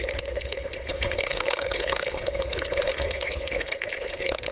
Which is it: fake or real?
fake